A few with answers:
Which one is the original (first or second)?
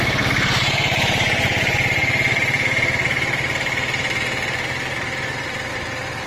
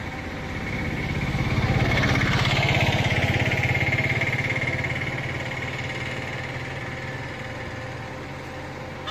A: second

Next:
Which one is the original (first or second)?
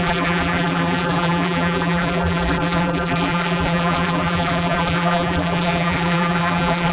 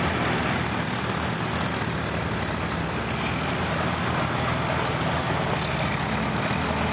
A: second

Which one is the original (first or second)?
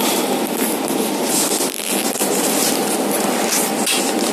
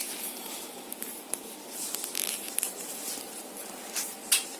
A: first